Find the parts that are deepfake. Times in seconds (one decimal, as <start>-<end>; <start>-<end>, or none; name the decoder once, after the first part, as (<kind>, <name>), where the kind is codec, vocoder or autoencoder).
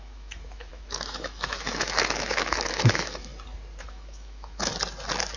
0.0-3.3 (autoencoder, DAC-VAE); 3.8-4.7